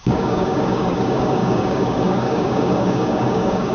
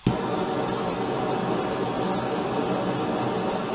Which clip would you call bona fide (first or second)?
second